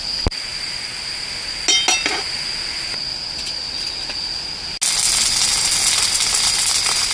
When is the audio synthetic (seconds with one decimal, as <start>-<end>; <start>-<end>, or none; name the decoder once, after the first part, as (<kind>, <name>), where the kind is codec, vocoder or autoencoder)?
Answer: none